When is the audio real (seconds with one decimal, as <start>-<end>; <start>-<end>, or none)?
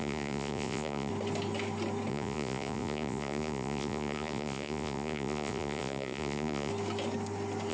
1.1-2.1; 6.7-7.7